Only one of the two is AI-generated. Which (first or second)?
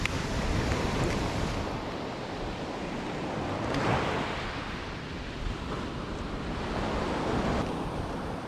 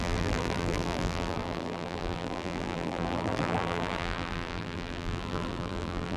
second